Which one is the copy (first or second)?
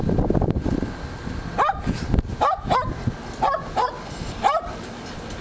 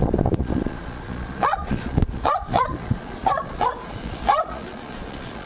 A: second